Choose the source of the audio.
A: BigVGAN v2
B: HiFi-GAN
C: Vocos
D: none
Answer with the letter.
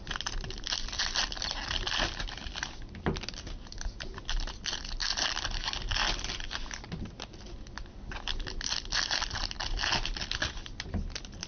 D